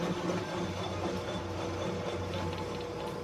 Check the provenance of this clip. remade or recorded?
recorded